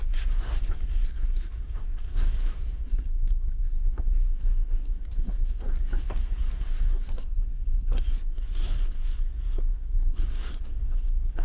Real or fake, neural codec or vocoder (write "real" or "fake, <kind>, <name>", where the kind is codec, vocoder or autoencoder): fake, codec, SNAC